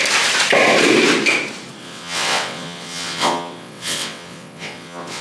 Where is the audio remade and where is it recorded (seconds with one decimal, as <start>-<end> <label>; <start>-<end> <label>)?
0.0-1.8 recorded; 1.8-5.2 remade